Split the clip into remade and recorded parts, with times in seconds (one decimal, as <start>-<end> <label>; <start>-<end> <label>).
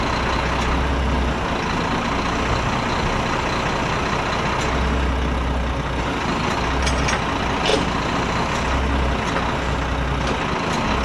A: 0.0-11.0 recorded